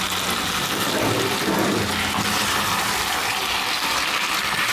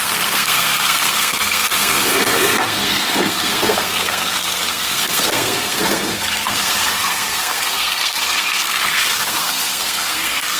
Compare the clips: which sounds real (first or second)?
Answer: first